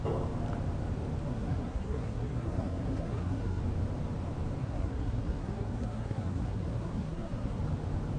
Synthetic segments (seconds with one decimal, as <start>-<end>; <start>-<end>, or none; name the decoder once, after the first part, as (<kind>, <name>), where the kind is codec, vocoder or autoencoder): 1.3-3.6 (codec, SNAC); 4.6-7.6